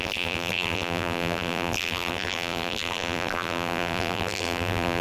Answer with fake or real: fake